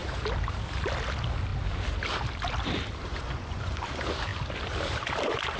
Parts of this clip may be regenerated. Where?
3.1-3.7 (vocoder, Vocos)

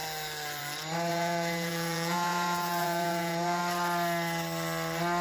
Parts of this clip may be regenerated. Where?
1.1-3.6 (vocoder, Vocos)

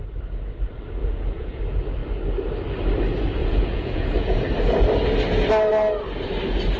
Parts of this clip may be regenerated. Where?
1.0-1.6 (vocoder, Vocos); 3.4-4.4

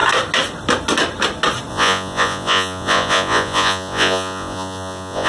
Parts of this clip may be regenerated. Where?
1.7-5.3 (vocoder, Vocos)

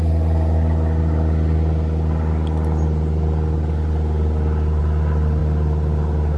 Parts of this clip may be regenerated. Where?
none

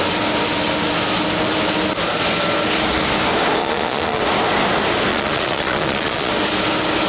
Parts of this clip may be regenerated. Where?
3.6-4.2 (vocoder, Vocos); 5.1-6.3

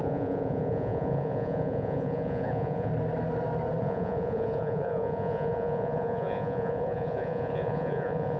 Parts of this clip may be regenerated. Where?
0.0-2.9 (vocoder, Vocos); 3.8-8.4